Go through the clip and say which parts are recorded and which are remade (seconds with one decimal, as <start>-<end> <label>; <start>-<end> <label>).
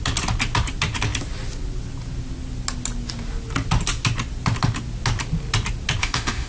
0.0-6.0 recorded; 6.0-6.5 remade